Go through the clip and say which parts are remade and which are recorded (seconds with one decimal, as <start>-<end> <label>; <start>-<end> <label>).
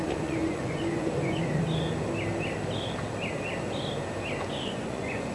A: 0.0-1.6 remade; 1.6-4.5 recorded; 4.5-5.3 remade